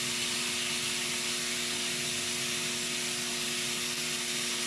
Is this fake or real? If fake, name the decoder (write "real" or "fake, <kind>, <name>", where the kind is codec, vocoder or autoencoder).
real